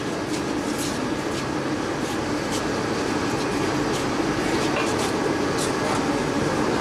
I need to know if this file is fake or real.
real